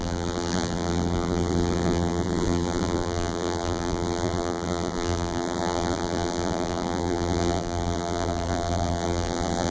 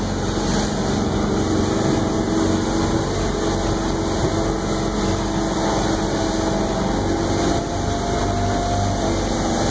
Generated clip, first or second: first